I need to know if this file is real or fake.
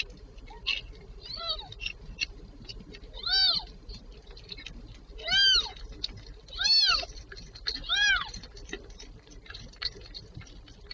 real